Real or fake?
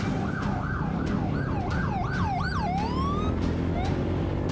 real